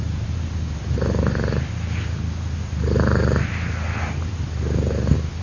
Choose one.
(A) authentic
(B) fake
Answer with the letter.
A